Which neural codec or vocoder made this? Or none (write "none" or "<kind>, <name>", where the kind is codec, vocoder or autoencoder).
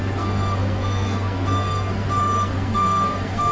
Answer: codec, SNAC